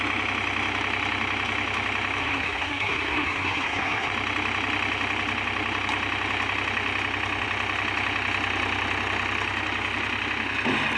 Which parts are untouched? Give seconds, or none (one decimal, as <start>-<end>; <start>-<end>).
0.0-2.2; 4.1-11.0